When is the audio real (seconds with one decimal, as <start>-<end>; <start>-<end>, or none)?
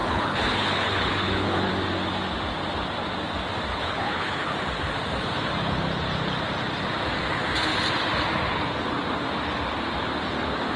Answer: 1.7-3.7; 4.5-10.8